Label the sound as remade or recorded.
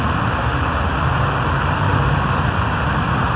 recorded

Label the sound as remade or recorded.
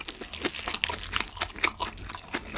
recorded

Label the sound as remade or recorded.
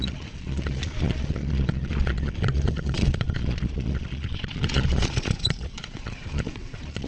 remade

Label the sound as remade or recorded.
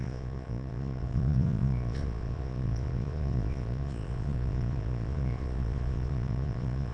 remade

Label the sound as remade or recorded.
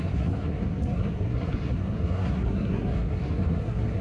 remade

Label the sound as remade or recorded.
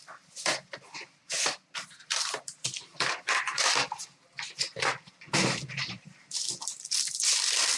remade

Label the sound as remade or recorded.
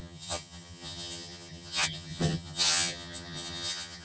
remade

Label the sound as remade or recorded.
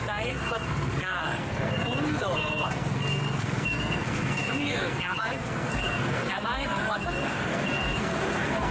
remade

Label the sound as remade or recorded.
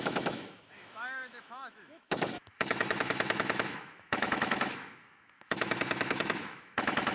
remade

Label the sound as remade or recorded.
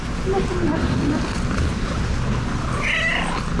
recorded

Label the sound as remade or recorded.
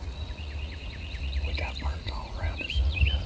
remade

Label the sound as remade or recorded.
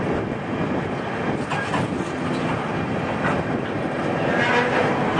recorded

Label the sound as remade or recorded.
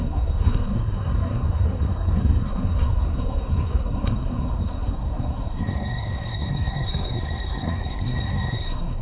remade